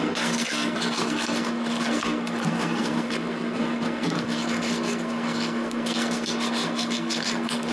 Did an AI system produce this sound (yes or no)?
yes